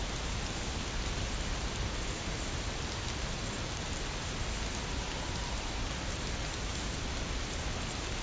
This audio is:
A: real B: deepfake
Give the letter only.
A